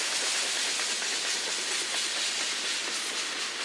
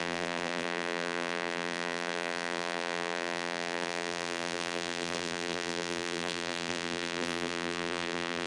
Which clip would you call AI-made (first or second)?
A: second